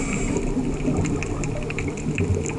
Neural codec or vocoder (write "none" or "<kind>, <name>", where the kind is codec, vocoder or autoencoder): none